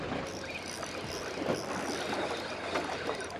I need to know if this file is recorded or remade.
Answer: recorded